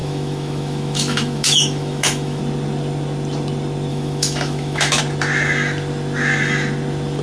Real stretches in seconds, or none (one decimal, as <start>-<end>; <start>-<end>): 2.4-3.9; 5.0-7.2